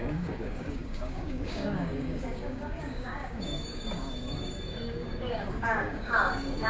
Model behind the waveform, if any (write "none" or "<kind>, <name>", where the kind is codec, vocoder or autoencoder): codec, DAC